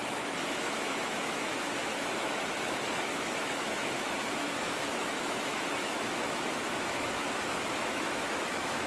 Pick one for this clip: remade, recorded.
remade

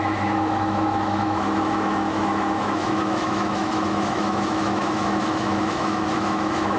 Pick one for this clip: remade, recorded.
remade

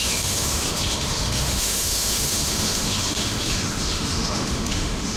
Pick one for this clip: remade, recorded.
remade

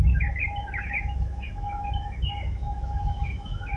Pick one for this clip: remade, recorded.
remade